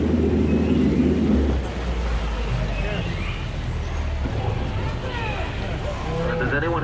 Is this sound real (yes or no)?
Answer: yes